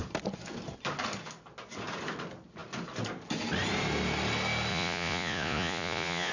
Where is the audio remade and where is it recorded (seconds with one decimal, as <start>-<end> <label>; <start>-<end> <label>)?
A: 0.0-4.7 recorded; 4.7-6.3 remade